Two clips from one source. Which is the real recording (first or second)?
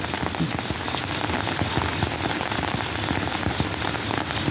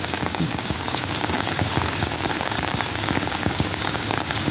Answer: first